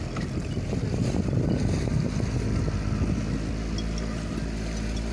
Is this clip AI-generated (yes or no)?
no